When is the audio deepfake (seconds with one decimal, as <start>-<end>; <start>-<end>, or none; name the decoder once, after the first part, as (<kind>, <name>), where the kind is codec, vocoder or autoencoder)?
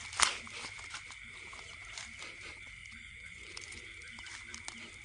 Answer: 2.8-3.8 (vocoder, Vocos)